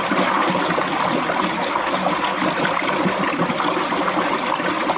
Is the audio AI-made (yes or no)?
no